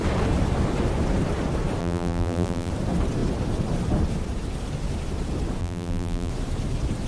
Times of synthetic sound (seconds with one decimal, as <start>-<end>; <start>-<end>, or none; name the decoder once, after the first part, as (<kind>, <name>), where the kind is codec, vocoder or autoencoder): 1.8-2.7 (vocoder, BigVGAN v2); 5.6-6.3